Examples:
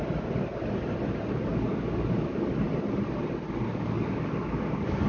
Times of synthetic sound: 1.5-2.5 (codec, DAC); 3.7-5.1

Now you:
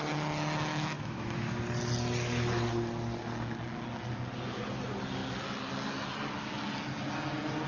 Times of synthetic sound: 0.7-1.6 (autoencoder, DAC-VAE)

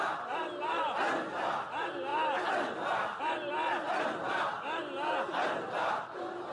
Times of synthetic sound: none

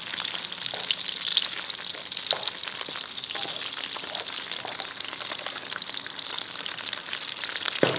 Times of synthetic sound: none

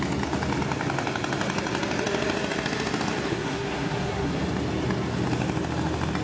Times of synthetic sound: 3.3-4.4 (codec, SNAC)

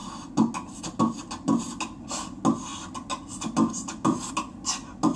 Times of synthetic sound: none

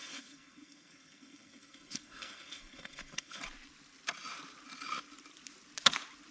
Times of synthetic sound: 0.0-3.4 (codec, SNAC)

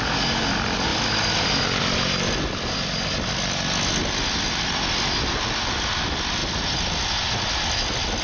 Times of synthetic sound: 6.4-7.0 (vocoder, BigVGAN v2)